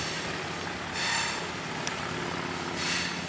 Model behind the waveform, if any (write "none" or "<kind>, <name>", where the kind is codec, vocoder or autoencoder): none